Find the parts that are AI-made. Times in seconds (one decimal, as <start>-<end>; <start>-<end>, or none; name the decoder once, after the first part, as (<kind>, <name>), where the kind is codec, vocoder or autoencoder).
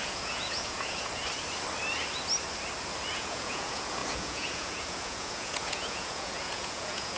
0.0-1.2 (vocoder, Vocos); 3.1-7.2